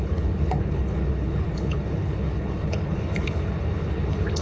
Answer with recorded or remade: remade